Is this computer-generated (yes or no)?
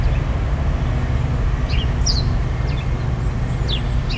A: no